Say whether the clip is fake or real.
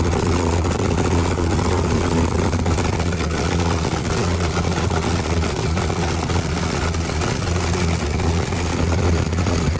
fake